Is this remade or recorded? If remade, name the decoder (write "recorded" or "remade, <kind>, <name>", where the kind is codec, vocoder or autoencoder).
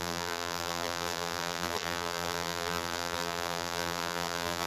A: remade, vocoder, BigVGAN v2